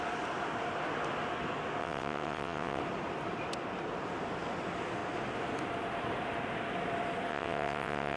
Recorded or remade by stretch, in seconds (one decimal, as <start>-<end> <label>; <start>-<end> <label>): 0.0-1.8 recorded; 1.8-2.8 remade; 2.8-7.3 recorded; 7.3-8.2 remade